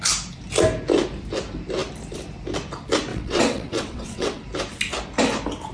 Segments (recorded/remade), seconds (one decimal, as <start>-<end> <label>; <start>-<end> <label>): 0.0-3.1 recorded; 3.1-4.4 remade; 4.4-5.7 recorded